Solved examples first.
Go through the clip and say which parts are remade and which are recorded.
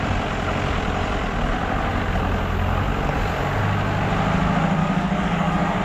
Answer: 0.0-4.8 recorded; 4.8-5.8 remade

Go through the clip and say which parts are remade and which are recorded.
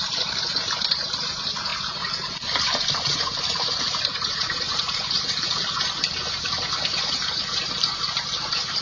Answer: 0.0-8.8 remade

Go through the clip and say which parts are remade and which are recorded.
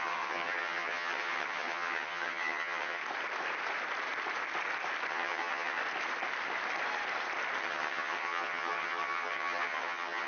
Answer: 0.0-3.0 remade; 3.0-5.1 recorded; 5.1-5.8 remade; 5.8-7.6 recorded; 7.6-10.3 remade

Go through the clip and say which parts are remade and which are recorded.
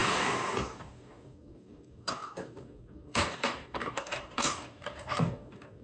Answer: 0.0-5.8 remade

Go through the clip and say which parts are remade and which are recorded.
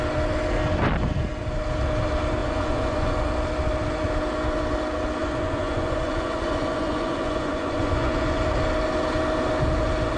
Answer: 0.0-2.4 recorded; 2.4-3.1 remade; 3.1-5.2 recorded; 5.2-8.4 remade; 8.4-10.2 recorded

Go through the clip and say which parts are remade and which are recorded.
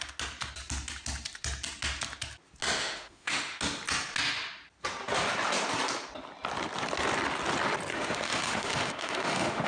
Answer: 0.0-2.8 recorded; 2.8-3.6 remade; 3.6-7.9 recorded; 7.9-9.7 remade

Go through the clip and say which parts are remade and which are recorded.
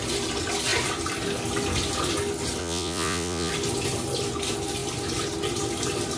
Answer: 0.0-2.6 recorded; 2.6-3.5 remade; 3.5-6.2 recorded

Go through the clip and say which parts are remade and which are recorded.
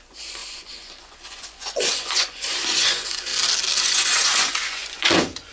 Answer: 0.0-3.3 remade; 3.3-3.8 recorded; 3.8-5.5 remade